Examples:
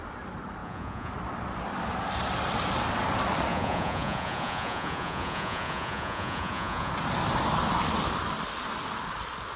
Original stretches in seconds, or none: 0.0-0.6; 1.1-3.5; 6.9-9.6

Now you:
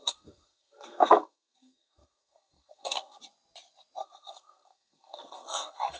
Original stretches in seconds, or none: 3.2-4.0

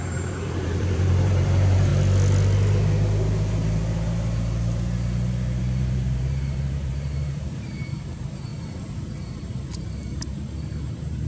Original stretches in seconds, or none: 1.9-5.6; 8.5-9.3

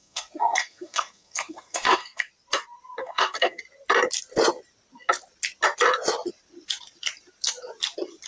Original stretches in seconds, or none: 2.3-3.0; 3.6-8.3

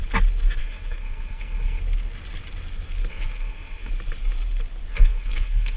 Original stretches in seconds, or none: 0.0-0.6; 1.8-3.1; 3.9-4.9

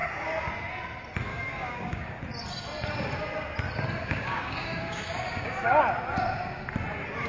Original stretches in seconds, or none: 0.5-1.3; 2.2-4.0; 5.8-7.3